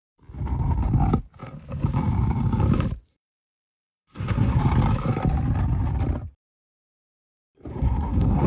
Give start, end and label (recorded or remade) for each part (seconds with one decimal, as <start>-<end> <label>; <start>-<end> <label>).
0.0-3.1 recorded; 3.1-4.6 remade; 4.6-7.7 recorded; 7.7-8.5 remade